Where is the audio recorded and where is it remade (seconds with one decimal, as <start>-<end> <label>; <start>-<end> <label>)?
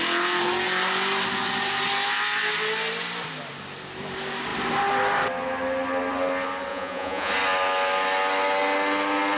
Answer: 0.0-6.7 recorded; 6.7-7.3 remade; 7.3-9.4 recorded